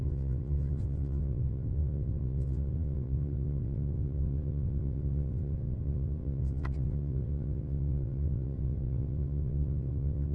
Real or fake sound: fake